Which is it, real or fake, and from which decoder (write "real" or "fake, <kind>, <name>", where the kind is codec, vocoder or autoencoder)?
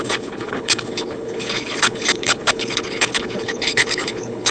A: fake, codec, HILCodec